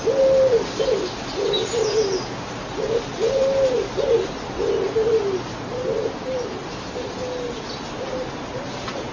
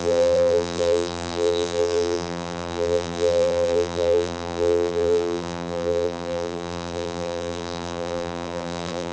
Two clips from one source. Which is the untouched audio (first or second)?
first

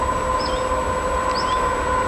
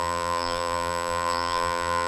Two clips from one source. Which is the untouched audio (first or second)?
first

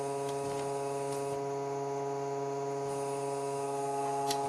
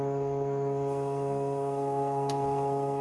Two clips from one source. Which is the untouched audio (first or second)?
first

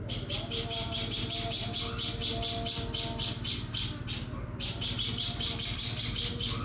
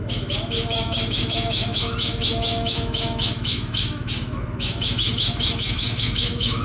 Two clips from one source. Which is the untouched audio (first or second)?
first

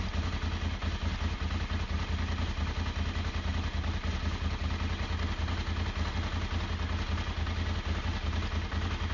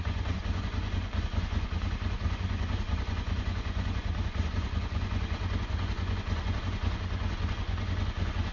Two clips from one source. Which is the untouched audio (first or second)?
first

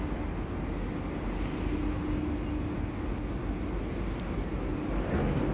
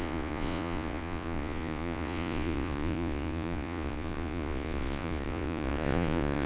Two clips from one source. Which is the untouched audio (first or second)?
first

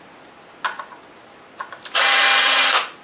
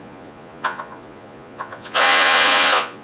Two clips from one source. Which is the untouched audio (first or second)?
first